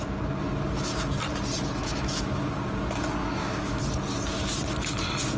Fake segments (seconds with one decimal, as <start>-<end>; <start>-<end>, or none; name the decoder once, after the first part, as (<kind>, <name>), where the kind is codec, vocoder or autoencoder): 1.8-2.5 (autoencoder, DAC-VAE); 3.2-3.8